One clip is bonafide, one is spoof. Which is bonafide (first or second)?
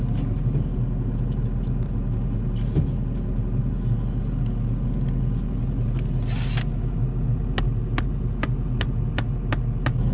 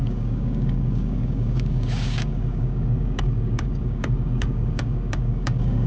first